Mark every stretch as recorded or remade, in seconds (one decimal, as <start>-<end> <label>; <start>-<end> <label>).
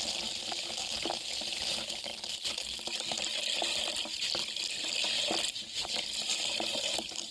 0.0-7.3 recorded